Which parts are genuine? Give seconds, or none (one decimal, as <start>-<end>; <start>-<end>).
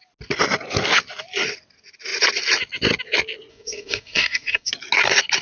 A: 0.0-3.5; 4.7-5.4